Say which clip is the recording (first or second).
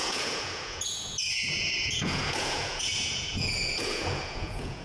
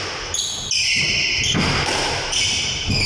second